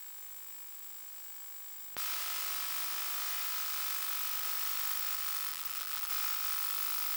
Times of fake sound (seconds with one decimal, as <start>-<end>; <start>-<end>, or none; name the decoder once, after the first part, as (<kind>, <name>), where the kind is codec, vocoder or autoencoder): 5.5-6.1 (vocoder, BigVGAN v2)